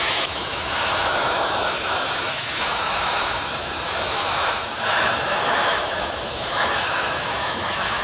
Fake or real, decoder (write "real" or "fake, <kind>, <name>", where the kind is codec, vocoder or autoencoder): fake, autoencoder, DAC-VAE